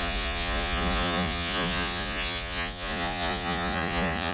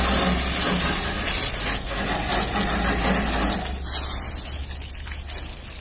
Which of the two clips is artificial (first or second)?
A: first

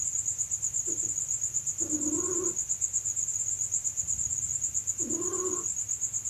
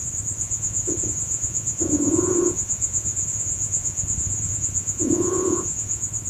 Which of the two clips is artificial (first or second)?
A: second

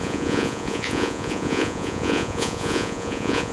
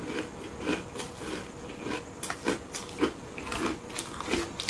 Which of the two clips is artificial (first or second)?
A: first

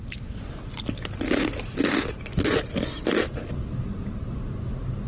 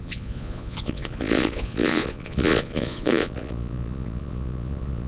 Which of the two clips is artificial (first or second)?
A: second